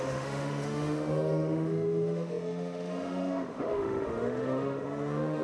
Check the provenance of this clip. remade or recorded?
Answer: remade